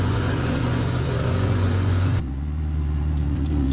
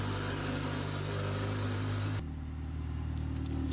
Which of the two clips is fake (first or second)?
first